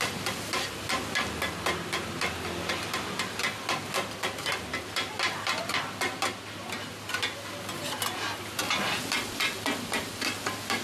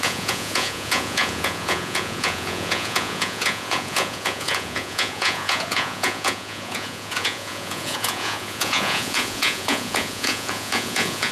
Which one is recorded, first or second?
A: first